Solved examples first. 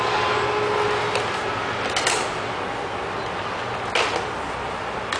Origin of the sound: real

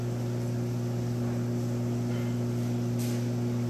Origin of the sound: real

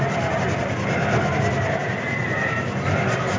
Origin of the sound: real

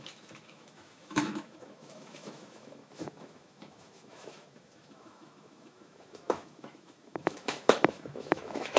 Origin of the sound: fake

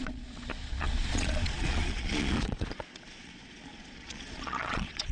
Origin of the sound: fake